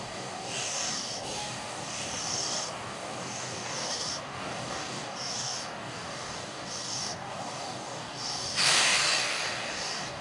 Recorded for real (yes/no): no